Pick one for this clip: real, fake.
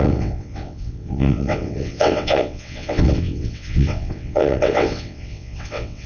fake